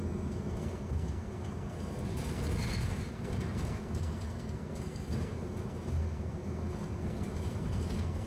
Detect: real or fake fake